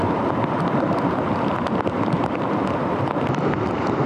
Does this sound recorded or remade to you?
recorded